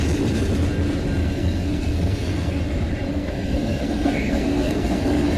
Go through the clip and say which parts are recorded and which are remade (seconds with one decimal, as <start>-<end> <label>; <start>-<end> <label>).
0.0-1.2 recorded; 1.2-2.6 remade; 2.6-3.1 recorded; 3.1-5.4 remade